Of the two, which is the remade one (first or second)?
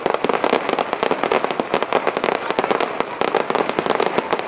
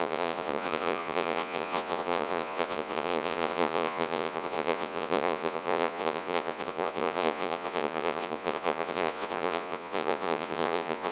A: second